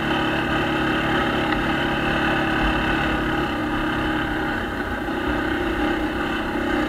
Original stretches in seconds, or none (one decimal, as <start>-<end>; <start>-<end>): 0.0-1.2; 1.8-3.6; 6.2-6.9